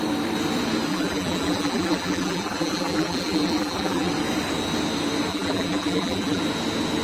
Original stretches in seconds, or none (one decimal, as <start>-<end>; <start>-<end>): 0.0-0.9; 4.1-5.3; 6.4-7.0